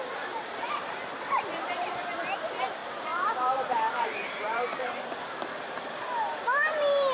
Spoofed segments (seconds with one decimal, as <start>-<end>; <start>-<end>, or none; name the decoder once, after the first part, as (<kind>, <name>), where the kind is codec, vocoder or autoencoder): 0.0-7.1 (vocoder, BigVGAN v2)